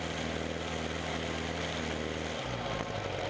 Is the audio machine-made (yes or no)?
no